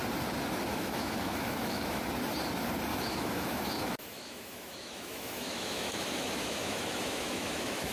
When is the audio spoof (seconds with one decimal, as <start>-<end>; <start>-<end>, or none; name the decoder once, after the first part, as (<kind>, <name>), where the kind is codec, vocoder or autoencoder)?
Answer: 0.7-2.0 (autoencoder, DAC-VAE); 2.9-7.9